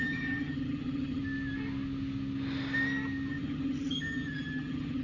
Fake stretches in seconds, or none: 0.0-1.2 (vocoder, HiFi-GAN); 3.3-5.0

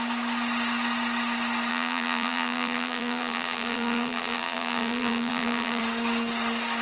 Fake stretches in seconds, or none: 1.7-5.8 (vocoder, BigVGAN v2)

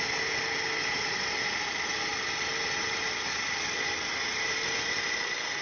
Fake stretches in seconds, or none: none

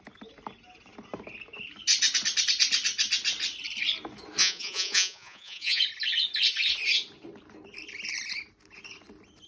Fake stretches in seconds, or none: 4.4-5.8 (vocoder, Vocos)